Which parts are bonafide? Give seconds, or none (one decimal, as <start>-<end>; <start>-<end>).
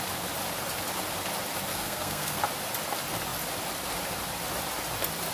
0.0-1.7; 2.4-5.3